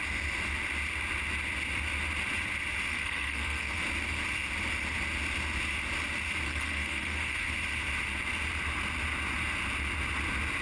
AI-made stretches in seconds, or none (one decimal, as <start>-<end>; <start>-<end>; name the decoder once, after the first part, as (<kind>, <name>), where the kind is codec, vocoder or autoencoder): 2.9-3.8 (codec, SNAC); 6.5-7.5